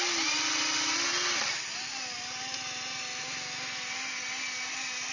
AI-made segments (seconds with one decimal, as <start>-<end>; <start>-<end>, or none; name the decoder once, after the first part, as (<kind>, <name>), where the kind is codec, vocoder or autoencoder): none